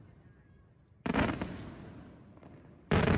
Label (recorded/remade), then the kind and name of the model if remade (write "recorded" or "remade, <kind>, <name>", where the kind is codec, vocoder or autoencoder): recorded